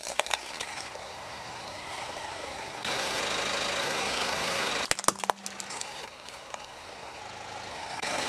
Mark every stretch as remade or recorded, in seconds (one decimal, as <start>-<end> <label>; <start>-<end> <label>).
0.0-3.2 remade; 3.2-3.8 recorded; 3.8-4.7 remade; 4.7-5.7 recorded; 5.7-7.2 remade; 7.2-7.7 recorded; 7.7-8.3 remade